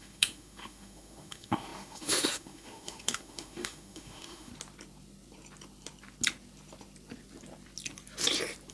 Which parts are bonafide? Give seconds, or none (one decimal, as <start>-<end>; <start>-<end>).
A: 4.5-8.7